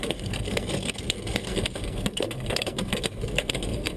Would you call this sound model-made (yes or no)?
yes